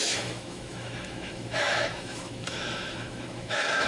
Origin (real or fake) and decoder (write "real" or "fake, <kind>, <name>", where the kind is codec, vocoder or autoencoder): fake, autoencoder, DAC-VAE